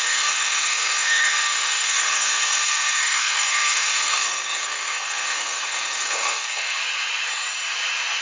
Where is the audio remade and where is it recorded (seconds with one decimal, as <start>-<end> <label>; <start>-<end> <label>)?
0.0-6.8 remade; 6.8-8.2 recorded